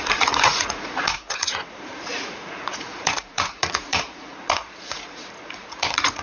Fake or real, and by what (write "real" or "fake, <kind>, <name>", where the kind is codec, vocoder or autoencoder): fake, vocoder, Vocos